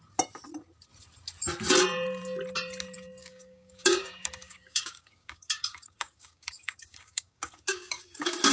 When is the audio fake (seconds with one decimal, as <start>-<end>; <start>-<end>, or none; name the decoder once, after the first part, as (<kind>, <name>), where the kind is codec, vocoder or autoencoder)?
3.2-8.5 (codec, DAC)